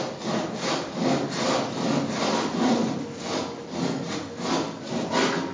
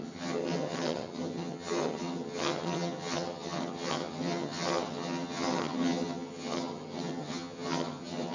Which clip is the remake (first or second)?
second